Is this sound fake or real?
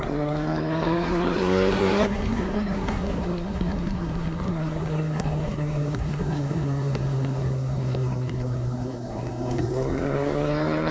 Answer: fake